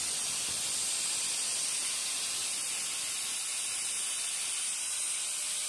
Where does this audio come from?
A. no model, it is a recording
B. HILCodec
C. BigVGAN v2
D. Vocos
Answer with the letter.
A